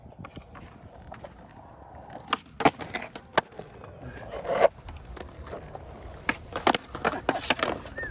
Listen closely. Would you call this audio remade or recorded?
recorded